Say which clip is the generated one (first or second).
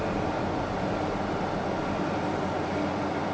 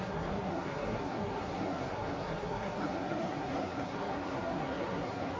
second